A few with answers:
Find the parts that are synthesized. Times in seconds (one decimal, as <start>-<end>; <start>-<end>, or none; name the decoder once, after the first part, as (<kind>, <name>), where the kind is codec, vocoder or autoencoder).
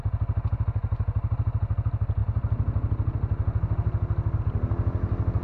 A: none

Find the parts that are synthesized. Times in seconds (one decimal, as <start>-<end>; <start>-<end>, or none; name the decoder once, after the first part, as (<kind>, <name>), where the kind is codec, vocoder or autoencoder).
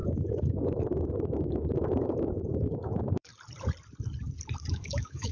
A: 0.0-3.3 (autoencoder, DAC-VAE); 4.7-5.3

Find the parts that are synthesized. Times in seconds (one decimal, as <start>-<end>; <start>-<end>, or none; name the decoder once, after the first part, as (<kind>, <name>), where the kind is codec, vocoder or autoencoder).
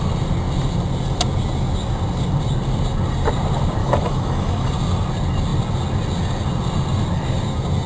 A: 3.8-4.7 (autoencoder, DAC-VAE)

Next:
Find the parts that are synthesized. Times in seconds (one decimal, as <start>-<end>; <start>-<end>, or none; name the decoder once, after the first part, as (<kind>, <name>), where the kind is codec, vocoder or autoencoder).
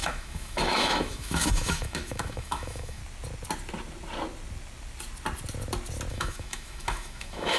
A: 0.0-3.0 (autoencoder, DAC-VAE); 6.1-7.6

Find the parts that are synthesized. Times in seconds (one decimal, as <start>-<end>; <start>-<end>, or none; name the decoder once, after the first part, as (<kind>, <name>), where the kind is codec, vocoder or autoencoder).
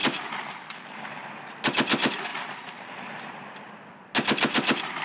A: none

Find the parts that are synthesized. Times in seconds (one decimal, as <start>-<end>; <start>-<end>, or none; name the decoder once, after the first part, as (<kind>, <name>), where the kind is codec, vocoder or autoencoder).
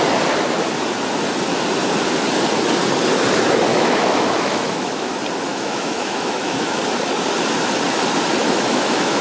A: 3.7-5.1 (autoencoder, DAC-VAE); 5.5-6.8; 8.4-9.2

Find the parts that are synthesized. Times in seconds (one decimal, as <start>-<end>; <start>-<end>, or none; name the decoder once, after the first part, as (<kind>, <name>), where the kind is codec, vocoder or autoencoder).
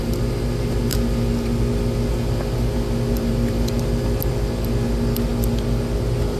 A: none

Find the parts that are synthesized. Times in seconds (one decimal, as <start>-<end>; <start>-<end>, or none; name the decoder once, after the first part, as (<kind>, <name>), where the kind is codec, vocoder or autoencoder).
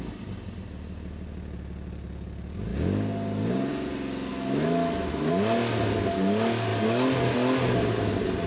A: 4.3-5.3 (autoencoder, DAC-VAE)